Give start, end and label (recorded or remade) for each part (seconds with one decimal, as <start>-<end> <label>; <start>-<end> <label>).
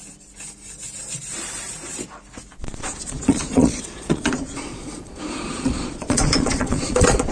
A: 0.0-2.5 recorded; 2.5-7.3 remade